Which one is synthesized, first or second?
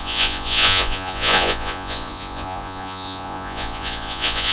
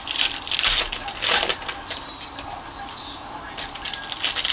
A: first